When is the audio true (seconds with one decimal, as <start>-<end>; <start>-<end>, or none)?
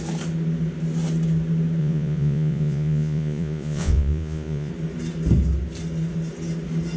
0.0-1.8; 4.7-7.0